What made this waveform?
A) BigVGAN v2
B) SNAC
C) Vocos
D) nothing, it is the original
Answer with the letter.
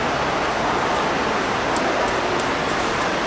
D